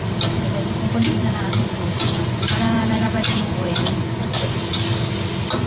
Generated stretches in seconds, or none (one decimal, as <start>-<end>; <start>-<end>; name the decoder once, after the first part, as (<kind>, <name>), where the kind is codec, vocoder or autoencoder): 1.2-4.6 (vocoder, Vocos)